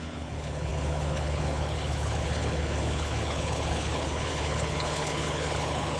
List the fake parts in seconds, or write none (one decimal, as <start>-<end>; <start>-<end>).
0.0-6.0